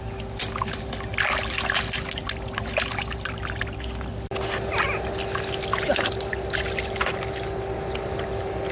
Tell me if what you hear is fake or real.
real